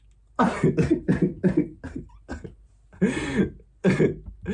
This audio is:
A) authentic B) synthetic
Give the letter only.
A